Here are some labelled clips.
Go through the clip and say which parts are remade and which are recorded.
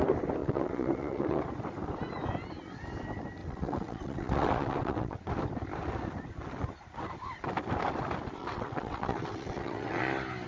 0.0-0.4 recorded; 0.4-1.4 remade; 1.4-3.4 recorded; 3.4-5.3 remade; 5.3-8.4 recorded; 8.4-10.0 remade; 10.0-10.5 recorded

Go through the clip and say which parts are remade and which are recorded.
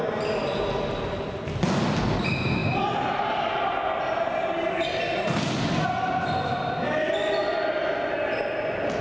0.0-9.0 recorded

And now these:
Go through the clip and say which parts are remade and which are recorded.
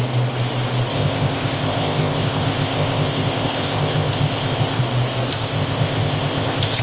0.0-0.9 recorded; 0.9-4.8 remade; 4.8-5.3 recorded; 5.3-6.8 remade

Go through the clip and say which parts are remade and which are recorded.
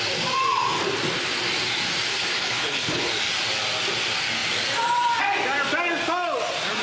0.0-2.1 recorded; 2.1-3.1 remade; 3.1-6.8 recorded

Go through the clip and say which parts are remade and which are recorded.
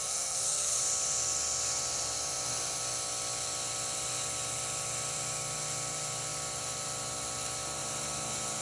0.0-0.8 remade; 0.8-8.6 recorded